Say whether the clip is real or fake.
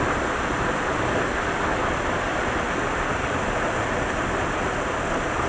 fake